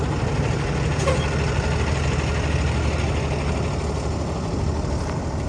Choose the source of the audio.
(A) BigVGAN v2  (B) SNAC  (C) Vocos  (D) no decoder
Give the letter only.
D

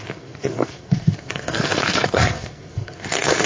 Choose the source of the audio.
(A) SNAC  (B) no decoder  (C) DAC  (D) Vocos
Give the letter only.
A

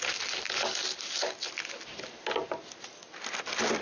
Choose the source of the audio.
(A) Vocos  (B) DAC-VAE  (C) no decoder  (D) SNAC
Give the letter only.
C